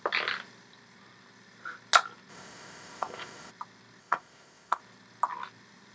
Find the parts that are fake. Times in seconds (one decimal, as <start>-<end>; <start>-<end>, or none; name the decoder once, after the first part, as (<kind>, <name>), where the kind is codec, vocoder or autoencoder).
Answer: 2.3-3.5 (codec, ZipCodec); 4.0-4.8